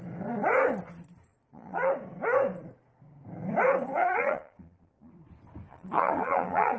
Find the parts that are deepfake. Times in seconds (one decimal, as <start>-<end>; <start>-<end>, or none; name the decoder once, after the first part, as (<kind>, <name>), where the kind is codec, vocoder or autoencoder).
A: 1.3-1.9 (vocoder, Vocos); 4.0-5.1; 5.7-6.8